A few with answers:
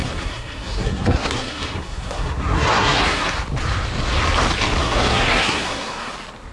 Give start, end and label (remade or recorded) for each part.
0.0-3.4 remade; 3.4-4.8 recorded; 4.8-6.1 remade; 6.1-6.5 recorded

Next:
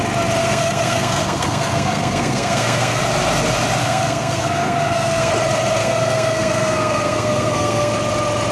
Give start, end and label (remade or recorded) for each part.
0.0-0.4 recorded; 0.4-3.0 remade; 3.0-3.8 recorded; 3.8-5.3 remade; 5.3-5.8 recorded; 5.8-7.9 remade; 7.9-8.5 recorded

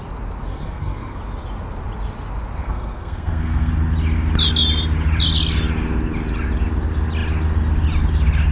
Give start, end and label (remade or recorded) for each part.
0.0-0.5 recorded; 0.5-1.2 remade; 1.2-2.6 recorded; 2.6-3.7 remade; 3.7-8.5 recorded

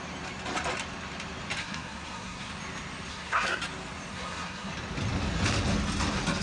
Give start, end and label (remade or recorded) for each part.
0.0-1.6 recorded; 1.6-2.5 remade; 2.5-3.1 recorded; 3.1-3.6 remade; 3.6-4.1 recorded; 4.1-4.7 remade; 4.7-6.4 recorded

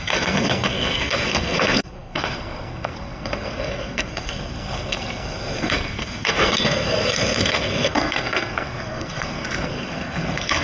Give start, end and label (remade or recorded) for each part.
0.0-10.6 remade

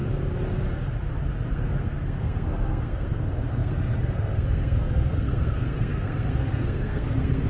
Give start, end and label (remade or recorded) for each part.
0.0-1.5 recorded; 1.5-7.5 remade

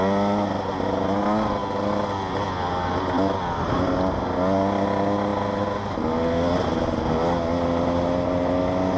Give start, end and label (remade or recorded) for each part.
0.0-9.0 recorded

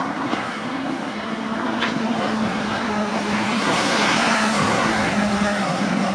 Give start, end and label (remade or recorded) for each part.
0.0-6.1 remade